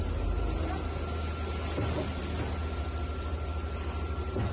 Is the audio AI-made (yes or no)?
no